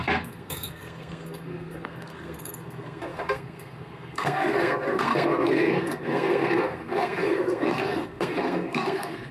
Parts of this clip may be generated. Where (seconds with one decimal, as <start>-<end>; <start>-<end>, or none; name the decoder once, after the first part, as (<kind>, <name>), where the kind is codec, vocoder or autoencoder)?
0.0-9.3 (codec, SNAC)